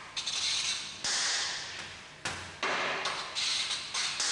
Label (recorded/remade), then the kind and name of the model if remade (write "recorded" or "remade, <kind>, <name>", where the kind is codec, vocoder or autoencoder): recorded